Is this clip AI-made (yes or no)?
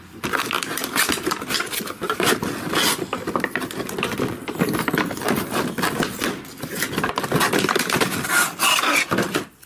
no